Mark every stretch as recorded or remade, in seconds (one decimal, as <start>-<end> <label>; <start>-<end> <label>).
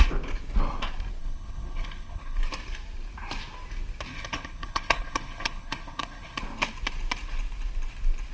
0.0-1.2 recorded; 1.2-2.4 remade; 2.4-4.1 recorded; 4.1-6.4 remade; 6.4-8.3 recorded